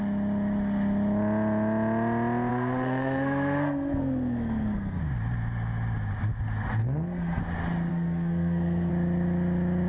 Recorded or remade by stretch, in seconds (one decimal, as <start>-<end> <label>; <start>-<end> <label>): 0.0-2.5 recorded; 2.5-5.0 remade; 5.0-6.8 recorded; 6.8-7.4 remade; 7.4-7.9 recorded; 7.9-8.9 remade; 8.9-9.9 recorded